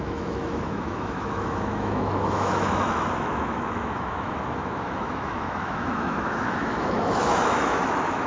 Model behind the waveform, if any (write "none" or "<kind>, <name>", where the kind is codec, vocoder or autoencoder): autoencoder, DAC-VAE